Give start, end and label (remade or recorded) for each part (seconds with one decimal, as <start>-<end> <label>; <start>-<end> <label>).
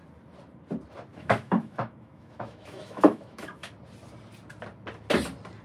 0.0-1.1 recorded; 1.1-3.7 remade; 3.7-5.6 recorded